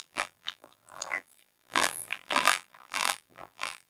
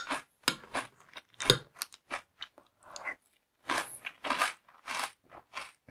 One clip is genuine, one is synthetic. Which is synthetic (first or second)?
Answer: first